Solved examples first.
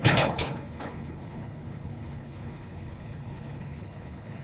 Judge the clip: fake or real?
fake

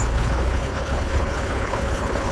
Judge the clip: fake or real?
fake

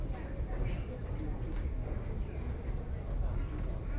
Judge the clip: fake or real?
real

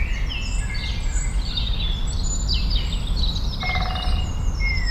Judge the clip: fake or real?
real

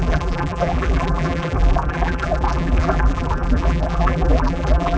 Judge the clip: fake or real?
fake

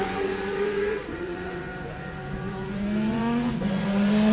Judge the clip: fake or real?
fake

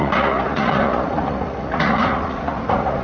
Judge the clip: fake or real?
fake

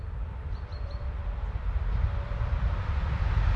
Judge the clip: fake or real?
fake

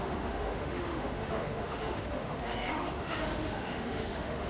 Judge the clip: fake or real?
fake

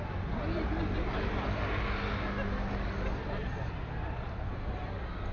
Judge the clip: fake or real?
real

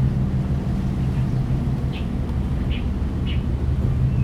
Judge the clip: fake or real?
real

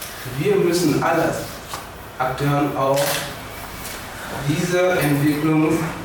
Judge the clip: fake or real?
fake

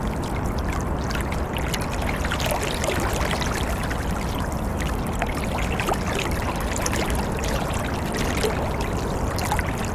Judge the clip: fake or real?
real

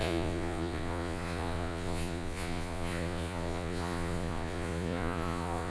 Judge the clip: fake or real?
fake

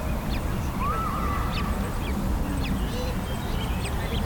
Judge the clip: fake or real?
real